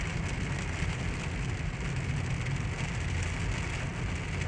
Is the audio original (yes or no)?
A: yes